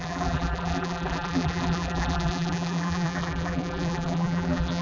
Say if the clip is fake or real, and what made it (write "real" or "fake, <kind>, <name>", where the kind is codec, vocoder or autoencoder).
fake, vocoder, BigVGAN v2